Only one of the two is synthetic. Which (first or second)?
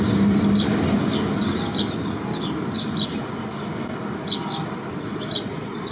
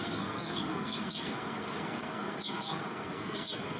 second